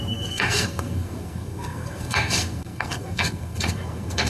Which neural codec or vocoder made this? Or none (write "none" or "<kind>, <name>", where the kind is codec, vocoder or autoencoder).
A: codec, SNAC